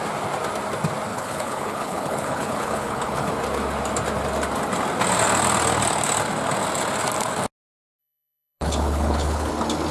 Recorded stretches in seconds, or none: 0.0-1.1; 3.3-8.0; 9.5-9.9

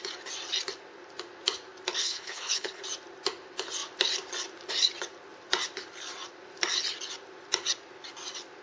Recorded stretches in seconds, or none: 0.0-2.0; 2.8-8.6

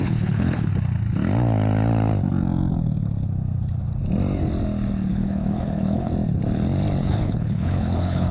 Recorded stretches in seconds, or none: 0.7-5.1; 6.1-7.0

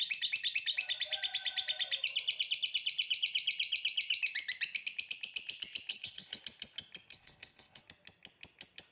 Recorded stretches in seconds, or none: 0.0-5.9; 6.4-7.1; 7.8-8.9

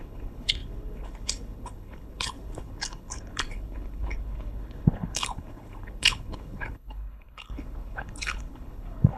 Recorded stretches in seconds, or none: none

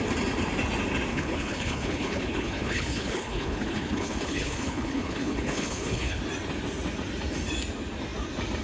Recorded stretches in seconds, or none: 0.0-1.1; 6.2-8.6

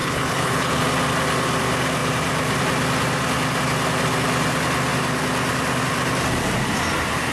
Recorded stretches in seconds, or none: 0.8-7.3

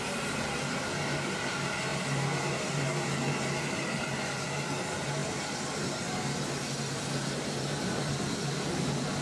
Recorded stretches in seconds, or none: 0.0-9.2